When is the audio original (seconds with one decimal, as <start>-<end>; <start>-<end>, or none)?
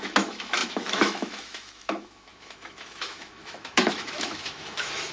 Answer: none